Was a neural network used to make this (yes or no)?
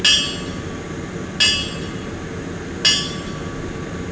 no